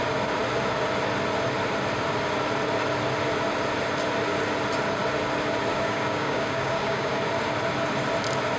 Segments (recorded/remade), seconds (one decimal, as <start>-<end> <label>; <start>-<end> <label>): 0.0-5.7 recorded; 5.7-7.1 remade; 7.1-8.6 recorded